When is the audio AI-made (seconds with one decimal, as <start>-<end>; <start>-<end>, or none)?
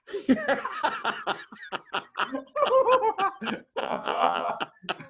3.8-4.5